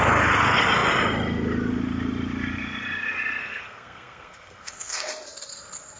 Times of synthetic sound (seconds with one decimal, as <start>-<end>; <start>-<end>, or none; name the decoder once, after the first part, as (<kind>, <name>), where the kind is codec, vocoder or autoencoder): 3.4-5.1 (codec, SNAC)